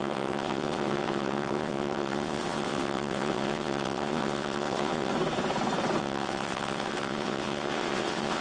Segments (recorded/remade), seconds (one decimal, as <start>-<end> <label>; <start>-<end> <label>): 0.0-5.1 remade; 5.1-6.0 recorded; 6.0-8.4 remade